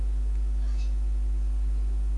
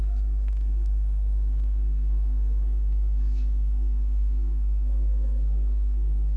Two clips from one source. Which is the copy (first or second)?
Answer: second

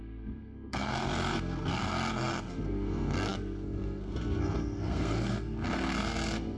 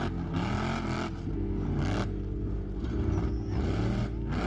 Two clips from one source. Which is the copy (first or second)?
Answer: first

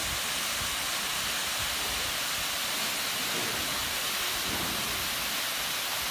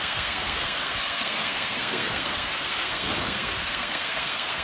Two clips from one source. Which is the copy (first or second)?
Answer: second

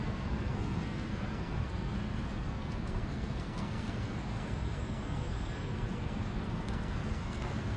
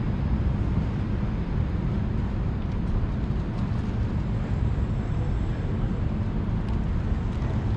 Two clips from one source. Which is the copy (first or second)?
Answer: first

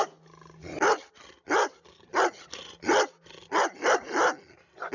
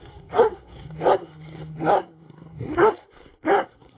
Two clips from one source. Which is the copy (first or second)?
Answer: second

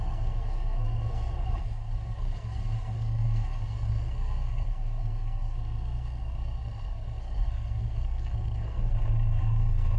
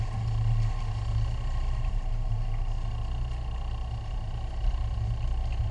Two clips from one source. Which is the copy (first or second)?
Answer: first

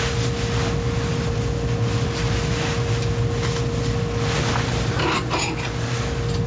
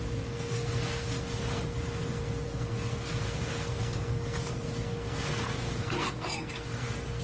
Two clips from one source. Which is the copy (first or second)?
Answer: second